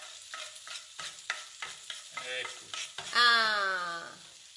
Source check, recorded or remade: recorded